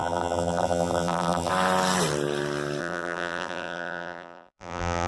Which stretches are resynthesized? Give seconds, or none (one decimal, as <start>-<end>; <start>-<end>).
0.0-1.5; 2.8-5.1